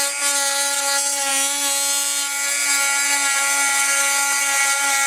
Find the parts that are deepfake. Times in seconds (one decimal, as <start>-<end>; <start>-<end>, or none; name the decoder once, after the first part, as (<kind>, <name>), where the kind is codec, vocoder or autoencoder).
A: none